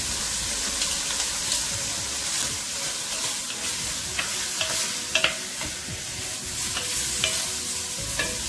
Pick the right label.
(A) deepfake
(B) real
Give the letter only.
B